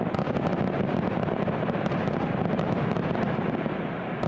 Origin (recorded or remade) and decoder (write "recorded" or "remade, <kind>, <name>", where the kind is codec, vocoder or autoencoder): recorded